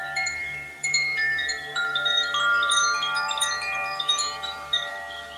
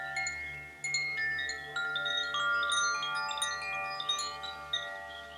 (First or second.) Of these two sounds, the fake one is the first